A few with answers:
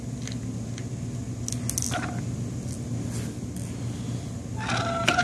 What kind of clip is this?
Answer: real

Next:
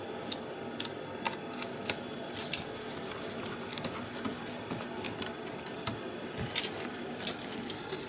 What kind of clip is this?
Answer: real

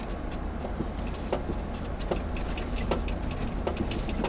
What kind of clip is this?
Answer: real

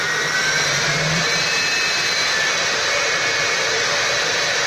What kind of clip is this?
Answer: fake